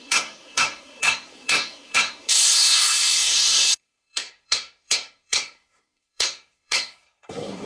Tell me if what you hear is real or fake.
fake